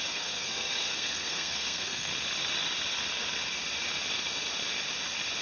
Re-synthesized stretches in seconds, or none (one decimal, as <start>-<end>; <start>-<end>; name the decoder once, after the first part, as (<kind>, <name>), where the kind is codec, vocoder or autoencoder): 0.0-2.1 (codec, SNAC)